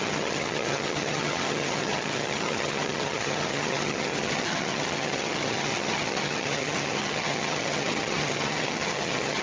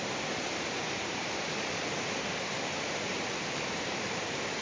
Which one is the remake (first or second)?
first